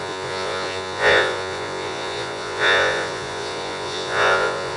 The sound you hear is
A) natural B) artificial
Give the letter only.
B